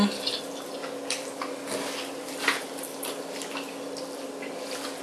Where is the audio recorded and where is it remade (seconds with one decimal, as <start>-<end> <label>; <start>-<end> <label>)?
0.0-5.0 recorded